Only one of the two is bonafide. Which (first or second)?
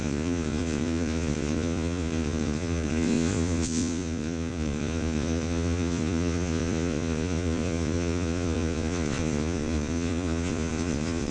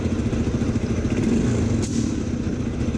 second